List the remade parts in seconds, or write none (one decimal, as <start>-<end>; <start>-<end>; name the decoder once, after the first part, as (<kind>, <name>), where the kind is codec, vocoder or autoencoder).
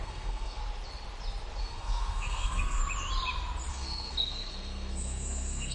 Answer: 0.0-0.6 (codec, SNAC); 1.6-2.8; 3.7-5.7